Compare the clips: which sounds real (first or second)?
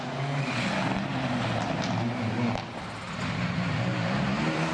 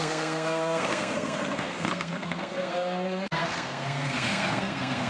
first